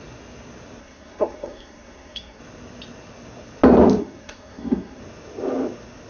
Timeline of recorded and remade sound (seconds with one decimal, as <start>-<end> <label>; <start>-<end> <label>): 0.0-0.8 recorded; 0.8-2.4 remade; 2.4-4.0 recorded; 4.0-5.0 remade; 5.0-6.1 recorded